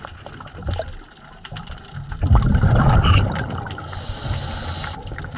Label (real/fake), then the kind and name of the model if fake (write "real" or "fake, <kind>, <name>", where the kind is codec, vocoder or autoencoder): real